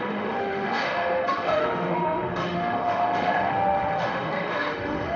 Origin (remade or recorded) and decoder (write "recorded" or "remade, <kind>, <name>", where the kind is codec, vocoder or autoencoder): remade, autoencoder, DAC-VAE